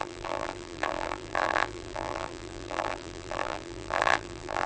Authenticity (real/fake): fake